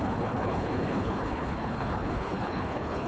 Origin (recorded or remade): remade